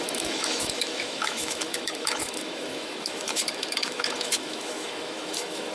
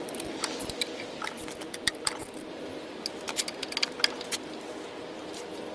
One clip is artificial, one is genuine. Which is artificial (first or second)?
first